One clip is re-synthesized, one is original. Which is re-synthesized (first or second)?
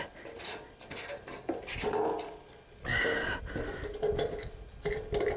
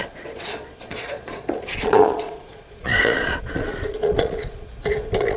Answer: second